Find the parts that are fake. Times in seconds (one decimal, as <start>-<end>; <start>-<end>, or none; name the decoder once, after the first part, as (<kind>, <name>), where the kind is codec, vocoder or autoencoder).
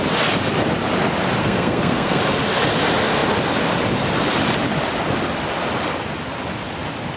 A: 1.4-2.2 (codec, SNAC)